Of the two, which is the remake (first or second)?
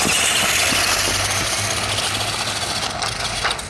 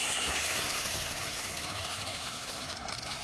second